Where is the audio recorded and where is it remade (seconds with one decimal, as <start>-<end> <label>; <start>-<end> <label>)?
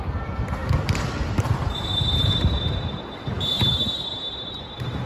0.0-5.1 remade